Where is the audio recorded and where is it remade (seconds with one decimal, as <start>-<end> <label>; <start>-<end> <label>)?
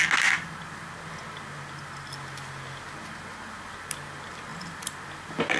0.0-5.6 recorded